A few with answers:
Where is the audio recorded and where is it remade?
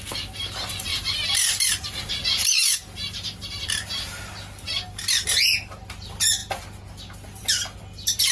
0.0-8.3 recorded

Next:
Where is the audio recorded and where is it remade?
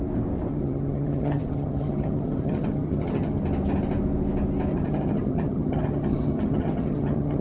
0.0-0.5 recorded; 0.5-3.4 remade; 3.4-4.7 recorded; 4.7-7.4 remade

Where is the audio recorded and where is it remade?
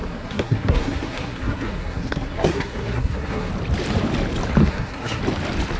0.0-3.5 remade; 3.5-4.6 recorded; 4.6-5.2 remade; 5.2-5.8 recorded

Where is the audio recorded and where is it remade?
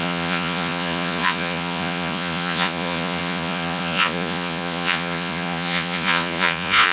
0.0-6.9 remade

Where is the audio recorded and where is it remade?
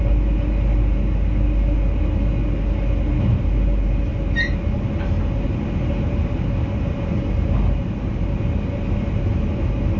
0.0-10.0 recorded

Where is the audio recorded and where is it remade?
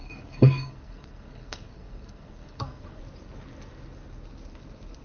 0.0-3.0 remade; 3.0-5.0 recorded